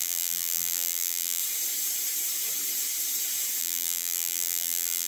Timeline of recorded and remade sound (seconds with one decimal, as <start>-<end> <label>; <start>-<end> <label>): 0.0-1.4 remade; 1.4-3.6 recorded; 3.6-5.1 remade